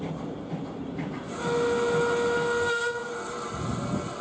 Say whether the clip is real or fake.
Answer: real